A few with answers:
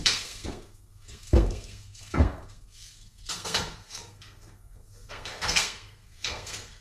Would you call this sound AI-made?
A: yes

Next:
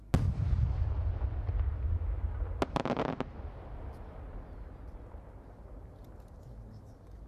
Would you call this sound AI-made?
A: no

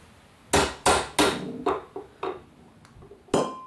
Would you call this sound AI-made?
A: no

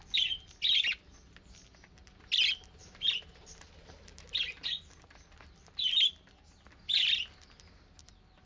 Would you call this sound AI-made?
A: no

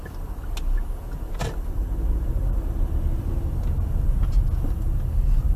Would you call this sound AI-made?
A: no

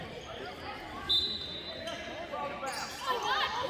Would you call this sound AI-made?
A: no